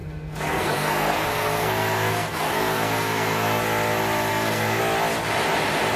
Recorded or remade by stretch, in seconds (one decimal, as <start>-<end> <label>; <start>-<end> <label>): 0.0-3.6 remade; 3.6-4.3 recorded; 4.3-4.8 remade; 4.8-6.0 recorded